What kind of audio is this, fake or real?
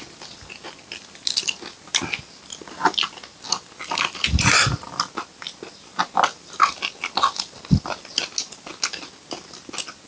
real